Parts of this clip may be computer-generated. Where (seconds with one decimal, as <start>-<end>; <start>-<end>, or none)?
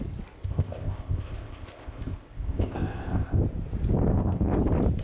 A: 0.4-3.4; 4.1-4.6